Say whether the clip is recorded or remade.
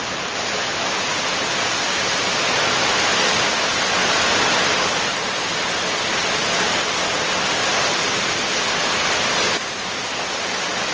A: recorded